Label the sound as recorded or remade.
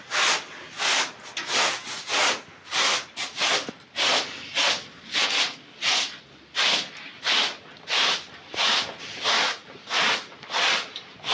recorded